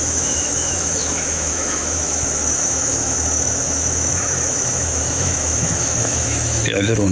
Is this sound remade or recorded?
remade